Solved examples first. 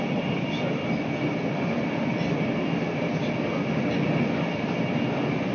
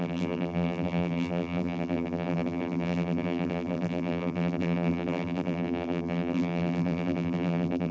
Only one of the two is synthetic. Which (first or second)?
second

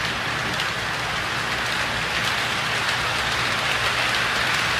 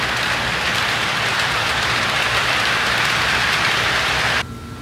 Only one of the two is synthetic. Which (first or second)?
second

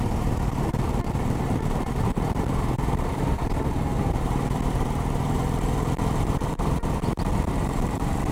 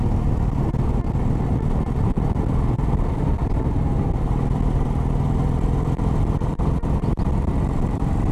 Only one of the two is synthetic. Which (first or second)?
first